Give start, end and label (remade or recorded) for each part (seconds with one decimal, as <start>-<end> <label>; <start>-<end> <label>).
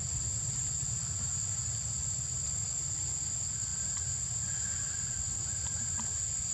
0.0-6.5 recorded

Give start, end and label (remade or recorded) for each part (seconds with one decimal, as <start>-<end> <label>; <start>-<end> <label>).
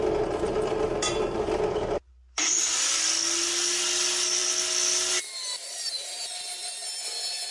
0.0-7.5 recorded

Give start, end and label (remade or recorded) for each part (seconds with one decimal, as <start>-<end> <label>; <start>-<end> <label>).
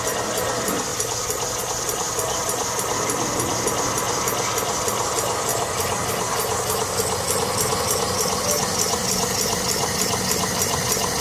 0.0-0.9 recorded; 0.9-1.6 remade; 1.6-5.5 recorded; 5.5-6.1 remade; 6.1-11.2 recorded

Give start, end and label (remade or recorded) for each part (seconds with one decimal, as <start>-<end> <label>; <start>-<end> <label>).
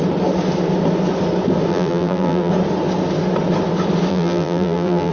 0.0-1.7 recorded; 1.7-2.5 remade; 2.5-4.1 recorded; 4.1-5.1 remade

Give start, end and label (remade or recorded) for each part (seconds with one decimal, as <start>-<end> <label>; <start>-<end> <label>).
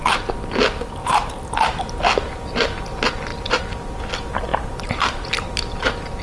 0.0-1.0 recorded; 1.0-1.8 remade; 1.8-4.5 recorded; 4.5-5.5 remade; 5.5-6.2 recorded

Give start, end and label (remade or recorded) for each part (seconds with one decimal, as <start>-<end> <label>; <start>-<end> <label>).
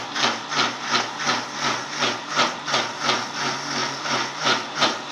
0.0-3.8 recorded; 3.8-5.1 remade